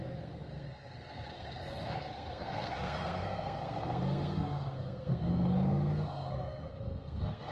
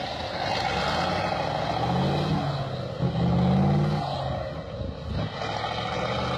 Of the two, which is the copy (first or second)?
first